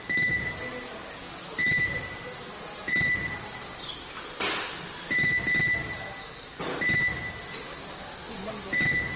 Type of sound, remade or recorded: recorded